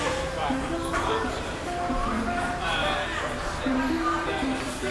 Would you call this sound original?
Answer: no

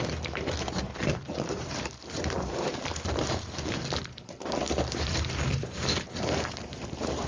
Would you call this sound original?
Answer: no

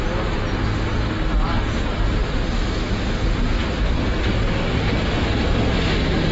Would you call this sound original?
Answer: yes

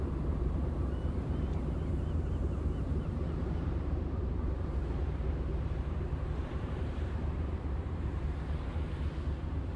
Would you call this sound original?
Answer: no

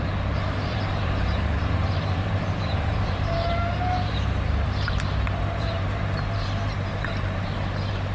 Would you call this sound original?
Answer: no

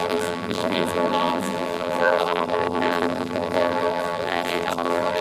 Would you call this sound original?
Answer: no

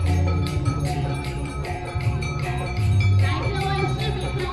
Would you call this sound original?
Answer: no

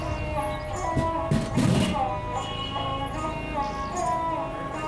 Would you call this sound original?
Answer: yes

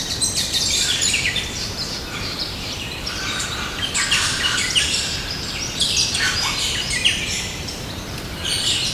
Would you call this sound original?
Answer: no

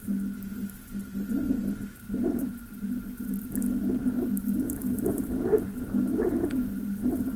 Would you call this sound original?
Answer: yes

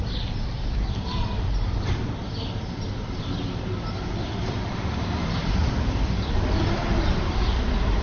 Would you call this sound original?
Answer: no